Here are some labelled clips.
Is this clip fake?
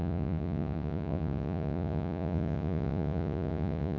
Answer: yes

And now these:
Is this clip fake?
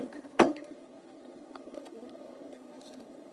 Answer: yes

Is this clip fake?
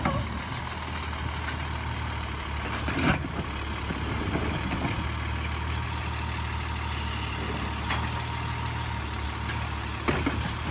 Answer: no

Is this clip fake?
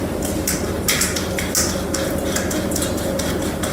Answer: no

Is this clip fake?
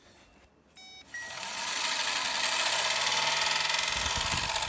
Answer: no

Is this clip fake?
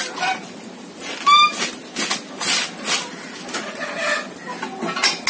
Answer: no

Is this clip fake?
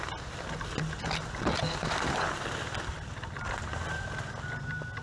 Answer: no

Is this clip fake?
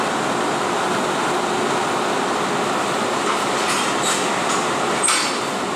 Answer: no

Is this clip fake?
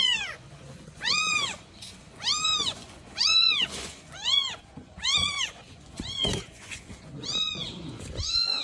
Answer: yes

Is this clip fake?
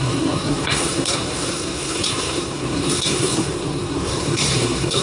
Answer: yes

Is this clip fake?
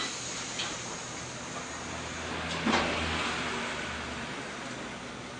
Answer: no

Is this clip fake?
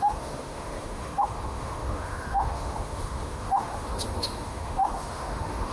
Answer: yes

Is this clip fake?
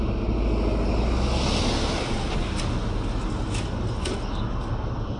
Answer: no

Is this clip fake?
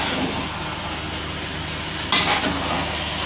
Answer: no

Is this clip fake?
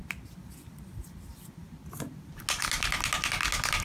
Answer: no